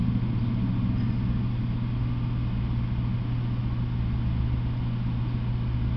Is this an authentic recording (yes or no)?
yes